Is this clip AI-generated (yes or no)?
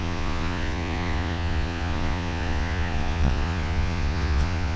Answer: yes